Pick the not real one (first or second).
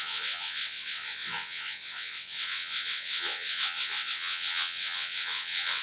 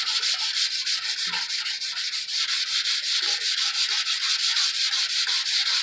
first